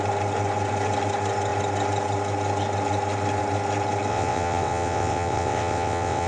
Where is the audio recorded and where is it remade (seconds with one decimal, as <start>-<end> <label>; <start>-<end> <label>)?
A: 0.0-4.1 recorded; 4.1-6.3 remade